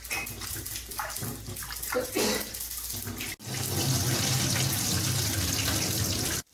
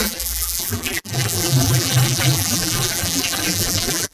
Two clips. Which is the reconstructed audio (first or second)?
second